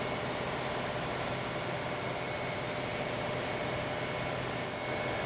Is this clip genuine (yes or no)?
yes